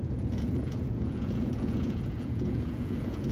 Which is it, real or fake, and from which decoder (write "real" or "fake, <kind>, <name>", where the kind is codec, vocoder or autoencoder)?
fake, vocoder, Vocos